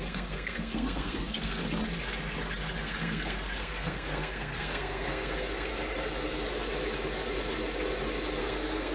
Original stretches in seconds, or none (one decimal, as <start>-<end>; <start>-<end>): 1.6-2.8; 5.7-8.4